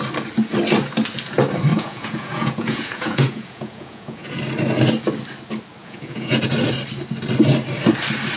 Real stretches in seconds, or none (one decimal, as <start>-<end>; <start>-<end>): 0.0-1.7; 4.4-5.8; 6.5-8.4